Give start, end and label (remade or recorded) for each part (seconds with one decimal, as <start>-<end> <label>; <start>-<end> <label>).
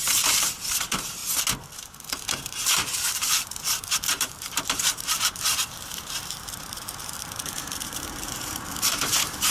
0.0-1.2 remade; 1.2-1.8 recorded; 1.8-9.5 remade